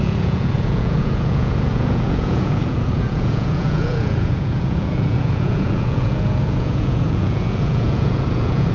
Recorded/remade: remade